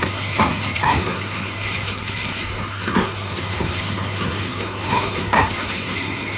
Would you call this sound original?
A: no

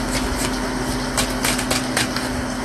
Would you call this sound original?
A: yes